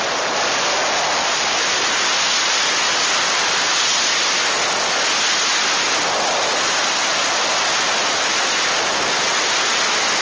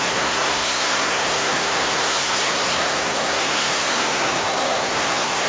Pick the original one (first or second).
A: first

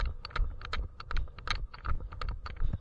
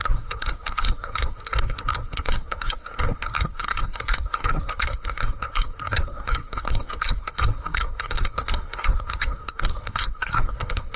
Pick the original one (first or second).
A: first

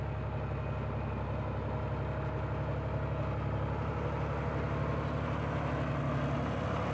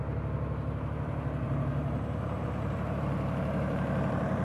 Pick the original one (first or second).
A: first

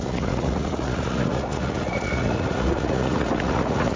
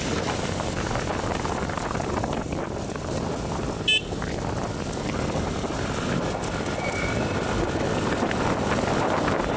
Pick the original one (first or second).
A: second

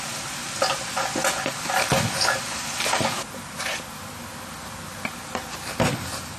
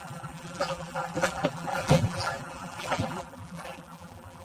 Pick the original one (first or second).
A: first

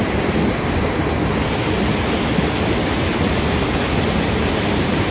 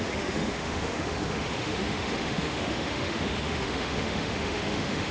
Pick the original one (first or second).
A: first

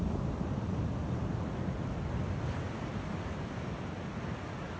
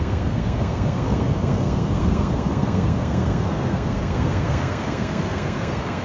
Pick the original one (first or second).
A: first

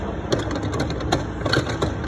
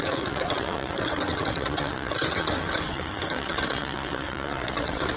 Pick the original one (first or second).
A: first